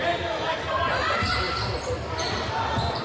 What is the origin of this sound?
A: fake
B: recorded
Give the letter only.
B